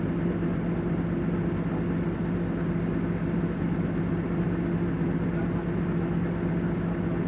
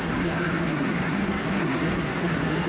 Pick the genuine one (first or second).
first